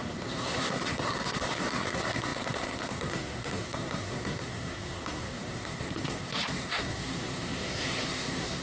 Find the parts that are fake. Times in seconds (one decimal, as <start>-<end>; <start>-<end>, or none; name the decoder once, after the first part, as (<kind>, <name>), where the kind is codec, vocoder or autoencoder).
0.0-8.6 (codec, SNAC)